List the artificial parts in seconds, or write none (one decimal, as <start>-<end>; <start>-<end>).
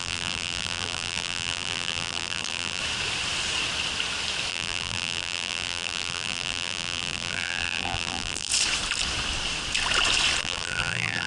0.0-2.8; 4.5-8.5; 10.4-11.3